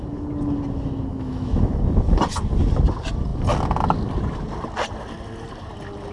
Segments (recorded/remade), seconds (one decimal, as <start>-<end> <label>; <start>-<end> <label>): 0.0-1.1 recorded; 1.1-1.7 remade; 1.7-6.1 recorded